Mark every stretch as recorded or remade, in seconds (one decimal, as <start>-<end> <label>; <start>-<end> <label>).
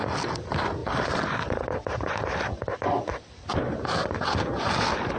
0.0-5.2 recorded